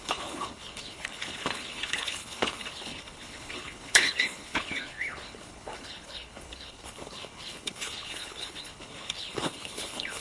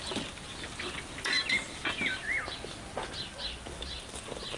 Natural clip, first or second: second